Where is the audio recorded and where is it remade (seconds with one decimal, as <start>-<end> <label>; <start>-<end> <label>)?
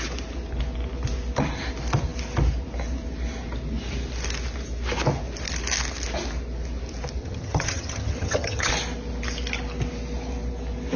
0.0-7.2 recorded; 7.2-8.7 remade; 8.7-11.0 recorded